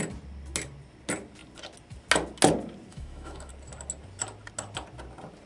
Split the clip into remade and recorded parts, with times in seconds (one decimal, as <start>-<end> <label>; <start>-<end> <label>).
0.0-2.9 recorded; 2.9-3.5 remade; 3.5-5.5 recorded